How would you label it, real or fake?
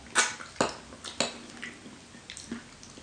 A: real